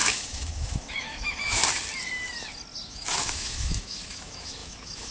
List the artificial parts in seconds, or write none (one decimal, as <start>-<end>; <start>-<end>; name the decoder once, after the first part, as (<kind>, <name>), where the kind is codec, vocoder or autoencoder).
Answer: 0.0-1.6 (autoencoder, DAC-VAE); 2.9-5.1